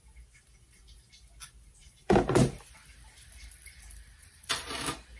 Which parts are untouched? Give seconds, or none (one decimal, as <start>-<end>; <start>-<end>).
0.0-1.8; 2.8-4.2; 4.7-5.2